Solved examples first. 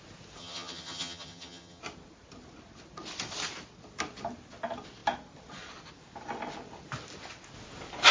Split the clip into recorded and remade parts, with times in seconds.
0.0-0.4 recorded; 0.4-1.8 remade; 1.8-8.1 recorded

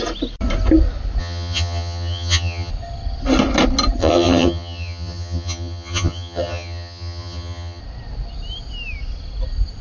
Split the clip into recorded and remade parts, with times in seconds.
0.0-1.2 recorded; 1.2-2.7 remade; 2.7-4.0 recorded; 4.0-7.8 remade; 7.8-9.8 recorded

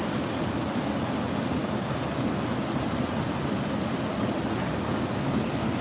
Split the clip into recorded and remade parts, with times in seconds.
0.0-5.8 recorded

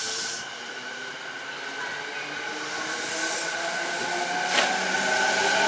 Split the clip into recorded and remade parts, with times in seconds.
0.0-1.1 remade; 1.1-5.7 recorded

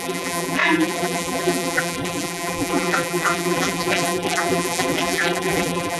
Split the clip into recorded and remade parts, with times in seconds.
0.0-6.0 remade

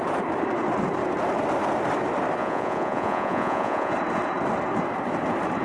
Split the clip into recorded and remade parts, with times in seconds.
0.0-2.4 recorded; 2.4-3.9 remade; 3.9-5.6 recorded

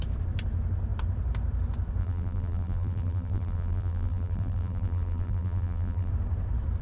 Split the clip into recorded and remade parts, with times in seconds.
0.0-2.0 recorded; 2.0-6.1 remade; 6.1-6.8 recorded

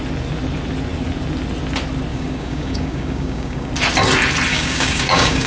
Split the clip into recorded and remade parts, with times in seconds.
0.0-2.1 recorded; 2.1-3.7 remade; 3.7-4.5 recorded; 4.5-5.5 remade